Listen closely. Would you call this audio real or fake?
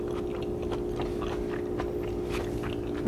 real